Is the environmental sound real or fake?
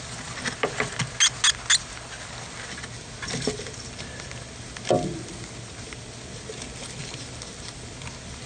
real